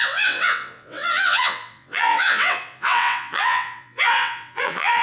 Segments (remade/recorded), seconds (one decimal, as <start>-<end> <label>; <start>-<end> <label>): 0.0-5.0 remade